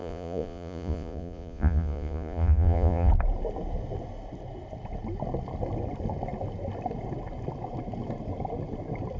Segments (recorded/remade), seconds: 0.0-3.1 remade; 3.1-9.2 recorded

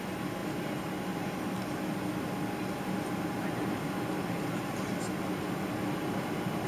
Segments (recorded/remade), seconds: 0.0-6.7 recorded

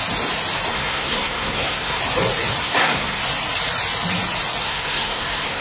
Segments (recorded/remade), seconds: 0.0-0.7 recorded; 0.7-2.0 remade; 2.0-2.6 recorded; 2.6-3.2 remade; 3.2-4.6 recorded; 4.6-5.6 remade

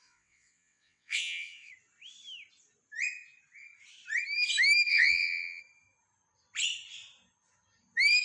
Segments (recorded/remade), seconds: 0.0-1.7 remade; 1.7-4.9 recorded; 4.9-5.6 remade; 5.6-8.2 recorded

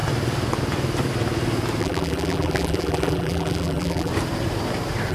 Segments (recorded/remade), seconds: 0.0-1.8 recorded; 1.8-4.1 remade; 4.1-5.1 recorded

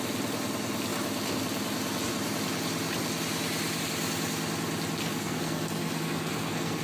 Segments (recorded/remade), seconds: 0.0-5.0 recorded; 5.0-6.8 remade